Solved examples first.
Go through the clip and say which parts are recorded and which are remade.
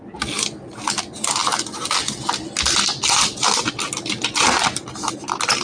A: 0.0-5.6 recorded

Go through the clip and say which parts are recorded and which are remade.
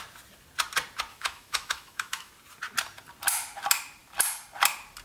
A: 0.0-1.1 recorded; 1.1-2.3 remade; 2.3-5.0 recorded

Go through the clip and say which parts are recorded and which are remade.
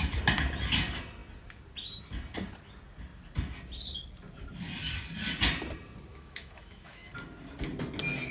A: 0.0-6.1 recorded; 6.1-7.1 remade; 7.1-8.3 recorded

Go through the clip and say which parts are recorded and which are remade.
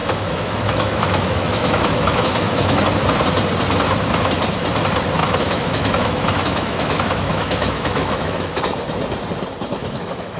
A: 0.0-2.8 remade; 2.8-5.2 recorded; 5.2-8.6 remade; 8.6-9.8 recorded; 9.8-10.4 remade